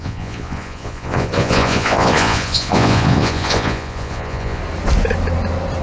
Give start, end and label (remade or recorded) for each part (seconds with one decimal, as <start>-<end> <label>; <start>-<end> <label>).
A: 0.0-4.6 remade; 4.6-5.8 recorded